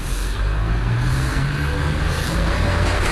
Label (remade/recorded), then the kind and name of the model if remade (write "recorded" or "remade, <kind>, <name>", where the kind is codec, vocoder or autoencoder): remade, codec, SNAC